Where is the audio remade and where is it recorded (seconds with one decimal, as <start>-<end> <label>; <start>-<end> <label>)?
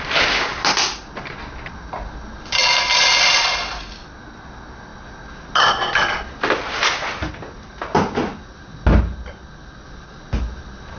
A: 0.0-11.0 recorded